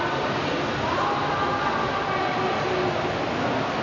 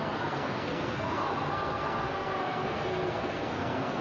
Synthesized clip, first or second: second